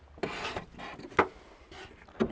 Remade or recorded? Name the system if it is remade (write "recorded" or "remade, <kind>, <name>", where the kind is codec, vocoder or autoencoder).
recorded